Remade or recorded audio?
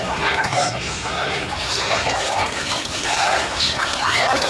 remade